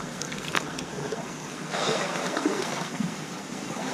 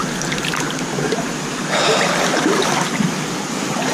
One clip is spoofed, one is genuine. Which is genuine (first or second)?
second